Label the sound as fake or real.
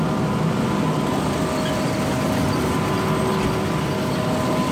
real